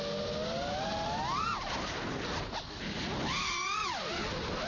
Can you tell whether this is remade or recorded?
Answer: recorded